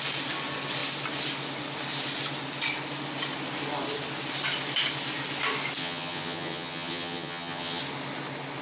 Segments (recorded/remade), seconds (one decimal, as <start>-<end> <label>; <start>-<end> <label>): 0.0-5.8 recorded; 5.8-7.8 remade; 7.8-8.6 recorded